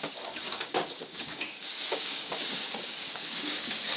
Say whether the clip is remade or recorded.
remade